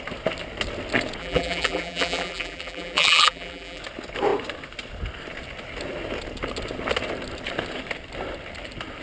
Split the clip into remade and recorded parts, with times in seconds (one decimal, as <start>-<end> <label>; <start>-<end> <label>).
0.0-1.2 recorded; 1.2-3.8 remade; 3.8-9.0 recorded